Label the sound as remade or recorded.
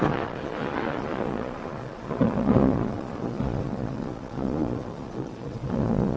remade